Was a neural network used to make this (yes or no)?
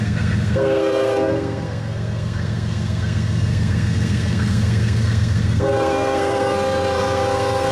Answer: yes